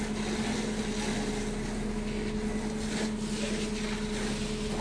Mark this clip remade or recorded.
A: recorded